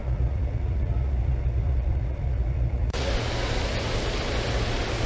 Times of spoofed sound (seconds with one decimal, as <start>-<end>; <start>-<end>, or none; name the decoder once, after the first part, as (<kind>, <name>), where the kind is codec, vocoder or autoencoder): 0.0-3.1 (vocoder, Vocos)